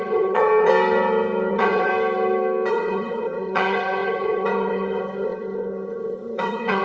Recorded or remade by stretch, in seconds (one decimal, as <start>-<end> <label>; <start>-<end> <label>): 0.0-0.7 remade; 0.7-1.5 recorded; 1.5-1.9 remade; 1.9-2.7 recorded; 2.7-6.8 remade